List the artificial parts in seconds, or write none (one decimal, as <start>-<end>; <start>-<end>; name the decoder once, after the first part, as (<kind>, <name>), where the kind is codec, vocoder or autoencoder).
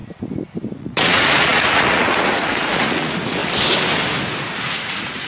0.8-3.4 (vocoder, Vocos); 4.8-5.3